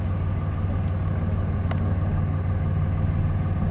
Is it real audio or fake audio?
real